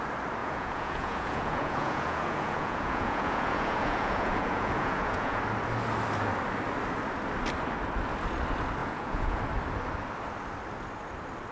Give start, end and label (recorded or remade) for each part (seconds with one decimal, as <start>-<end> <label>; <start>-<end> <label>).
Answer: 0.0-0.4 recorded; 0.4-5.4 remade; 5.4-8.8 recorded; 8.8-9.4 remade; 9.4-11.5 recorded